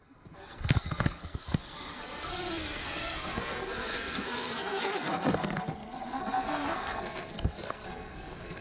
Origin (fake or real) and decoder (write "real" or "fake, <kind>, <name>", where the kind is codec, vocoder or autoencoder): fake, codec, SNAC